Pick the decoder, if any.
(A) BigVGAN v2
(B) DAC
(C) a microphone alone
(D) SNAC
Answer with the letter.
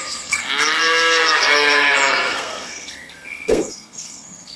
D